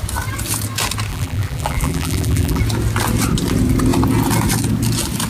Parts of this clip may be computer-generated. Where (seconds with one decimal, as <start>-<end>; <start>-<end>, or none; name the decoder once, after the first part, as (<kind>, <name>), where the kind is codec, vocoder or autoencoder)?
1.1-2.6 (vocoder, BigVGAN v2)